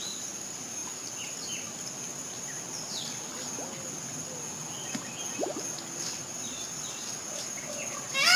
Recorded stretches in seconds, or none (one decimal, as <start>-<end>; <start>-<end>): 0.0-8.4